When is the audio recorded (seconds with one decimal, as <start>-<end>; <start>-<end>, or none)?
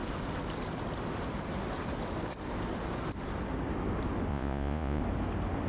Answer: 0.0-4.3; 5.0-5.7